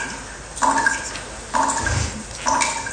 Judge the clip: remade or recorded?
recorded